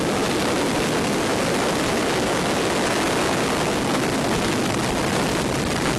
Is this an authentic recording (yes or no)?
yes